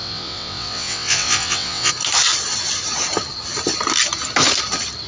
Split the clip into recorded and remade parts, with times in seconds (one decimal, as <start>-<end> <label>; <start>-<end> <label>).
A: 0.0-1.9 remade; 1.9-5.1 recorded